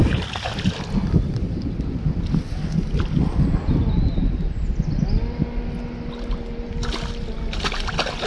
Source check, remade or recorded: recorded